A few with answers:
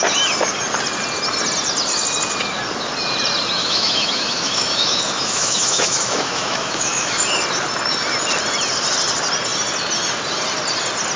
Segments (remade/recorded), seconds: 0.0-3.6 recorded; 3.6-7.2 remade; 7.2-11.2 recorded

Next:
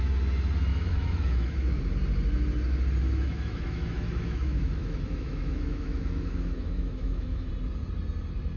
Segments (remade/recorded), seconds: 0.0-0.7 recorded; 0.7-1.8 remade; 1.8-3.0 recorded; 3.0-7.5 remade; 7.5-8.6 recorded

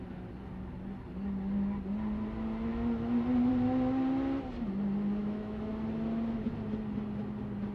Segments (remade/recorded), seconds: 0.0-5.2 recorded; 5.2-5.7 remade; 5.7-7.7 recorded

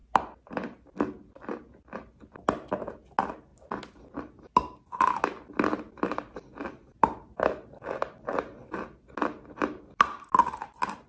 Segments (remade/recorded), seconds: 0.0-11.1 recorded

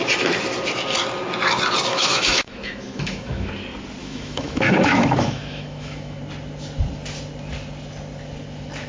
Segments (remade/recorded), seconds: 0.0-1.9 recorded; 1.9-3.5 remade; 3.5-4.0 recorded; 4.0-6.2 remade; 6.2-8.9 recorded

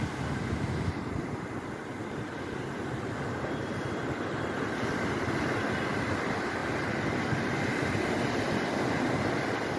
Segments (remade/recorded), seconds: 0.0-9.8 recorded

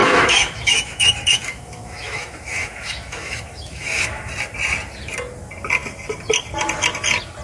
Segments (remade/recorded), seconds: 0.0-4.3 remade; 4.3-7.4 recorded

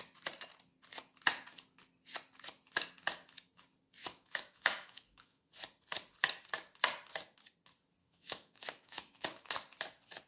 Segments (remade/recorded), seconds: 0.0-4.0 recorded; 4.0-5.5 remade; 5.5-8.0 recorded; 8.0-9.5 remade; 9.5-10.3 recorded